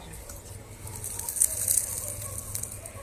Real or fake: real